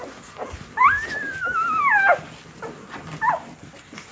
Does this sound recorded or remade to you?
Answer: recorded